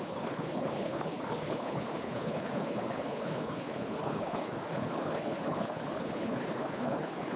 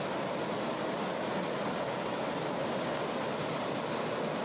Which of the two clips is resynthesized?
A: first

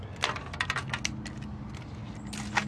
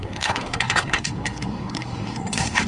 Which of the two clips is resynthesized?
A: second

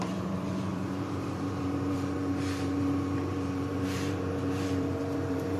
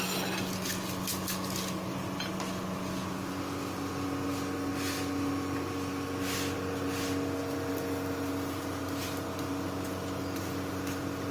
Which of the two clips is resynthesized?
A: first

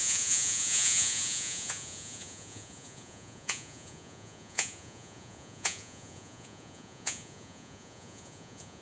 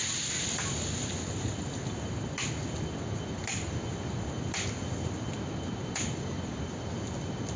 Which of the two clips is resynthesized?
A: first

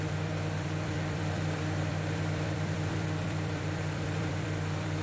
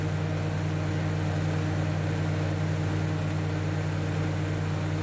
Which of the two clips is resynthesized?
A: first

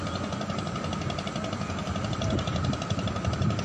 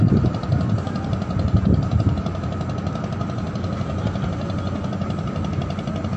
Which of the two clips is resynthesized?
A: first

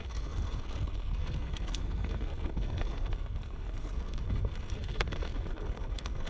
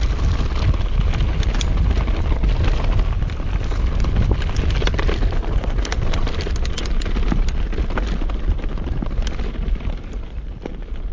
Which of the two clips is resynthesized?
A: first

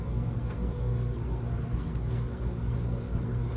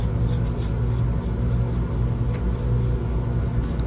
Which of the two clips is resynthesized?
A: first